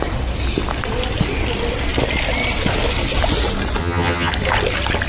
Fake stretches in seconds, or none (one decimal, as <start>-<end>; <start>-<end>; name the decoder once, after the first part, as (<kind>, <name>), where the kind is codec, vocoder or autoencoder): 3.8-4.3 (vocoder, HiFi-GAN)